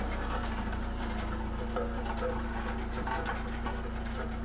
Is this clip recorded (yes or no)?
yes